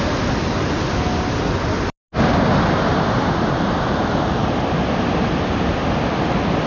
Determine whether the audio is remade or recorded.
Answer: recorded